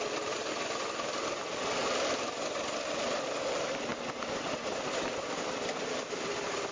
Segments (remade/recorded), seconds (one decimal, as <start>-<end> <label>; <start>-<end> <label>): 0.0-6.7 recorded